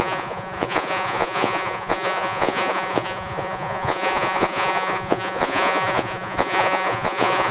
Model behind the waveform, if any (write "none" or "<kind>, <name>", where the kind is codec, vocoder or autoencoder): vocoder, Vocos